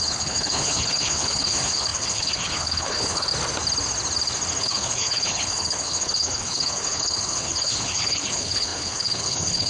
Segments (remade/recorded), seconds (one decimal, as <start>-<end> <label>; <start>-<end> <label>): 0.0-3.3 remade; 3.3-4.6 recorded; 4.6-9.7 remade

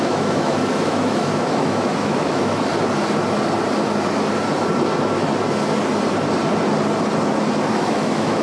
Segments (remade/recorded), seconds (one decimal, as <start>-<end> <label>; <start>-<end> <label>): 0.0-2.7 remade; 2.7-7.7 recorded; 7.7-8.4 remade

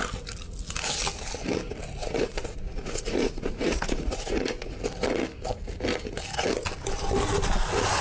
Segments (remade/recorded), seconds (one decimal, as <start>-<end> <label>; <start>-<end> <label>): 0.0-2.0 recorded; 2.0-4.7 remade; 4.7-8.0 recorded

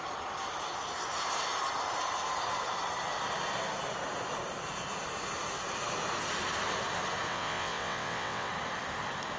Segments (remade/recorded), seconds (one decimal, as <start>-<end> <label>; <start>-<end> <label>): 0.0-7.3 recorded; 7.3-8.5 remade; 8.5-9.4 recorded

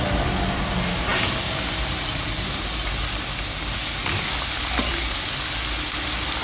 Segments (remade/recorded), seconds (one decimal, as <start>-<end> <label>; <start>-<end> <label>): 0.0-6.4 recorded

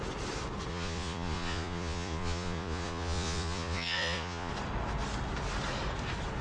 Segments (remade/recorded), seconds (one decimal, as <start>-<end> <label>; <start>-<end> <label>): 0.0-0.7 recorded; 0.7-4.5 remade; 4.5-6.4 recorded

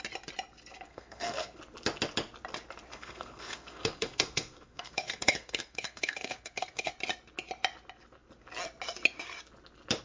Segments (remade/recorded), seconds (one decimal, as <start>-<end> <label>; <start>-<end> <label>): 0.0-0.9 recorded; 0.9-1.6 remade; 1.6-2.9 recorded; 2.9-6.9 remade; 6.9-10.0 recorded

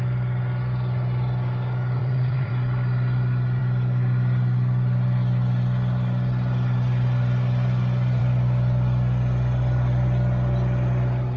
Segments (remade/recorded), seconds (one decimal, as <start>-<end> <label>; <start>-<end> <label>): 0.0-2.0 recorded; 2.0-2.5 remade; 2.5-11.4 recorded